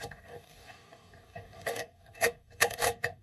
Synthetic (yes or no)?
yes